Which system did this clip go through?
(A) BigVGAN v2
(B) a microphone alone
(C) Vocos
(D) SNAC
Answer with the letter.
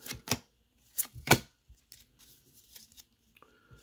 B